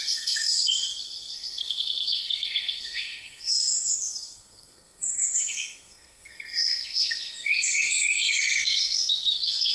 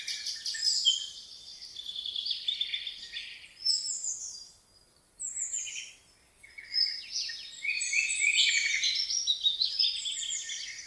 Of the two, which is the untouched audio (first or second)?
second